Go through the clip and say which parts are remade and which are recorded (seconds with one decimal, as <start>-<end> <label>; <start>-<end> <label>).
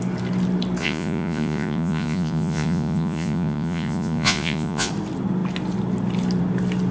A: 0.0-0.8 recorded; 0.8-4.9 remade; 4.9-6.9 recorded